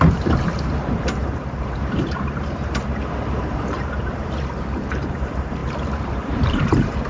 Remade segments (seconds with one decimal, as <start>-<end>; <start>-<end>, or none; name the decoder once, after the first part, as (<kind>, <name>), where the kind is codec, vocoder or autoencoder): 0.0-7.1 (vocoder, BigVGAN v2)